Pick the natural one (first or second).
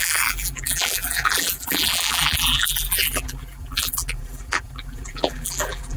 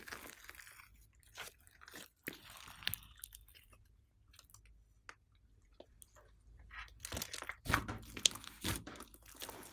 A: second